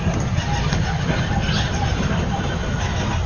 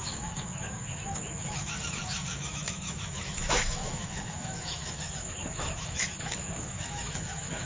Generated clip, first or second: second